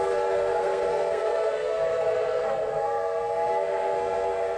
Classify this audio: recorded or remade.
remade